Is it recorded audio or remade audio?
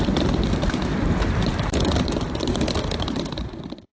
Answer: remade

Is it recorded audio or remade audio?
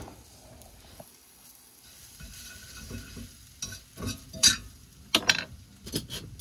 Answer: recorded